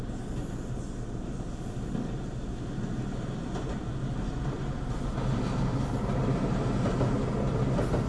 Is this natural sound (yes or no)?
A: yes